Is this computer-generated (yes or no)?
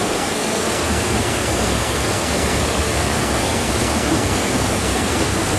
yes